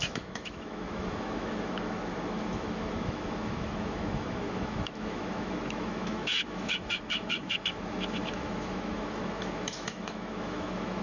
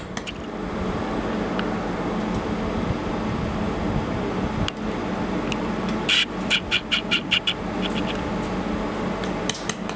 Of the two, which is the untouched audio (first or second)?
second